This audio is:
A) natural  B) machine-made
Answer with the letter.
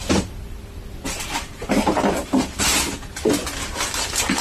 A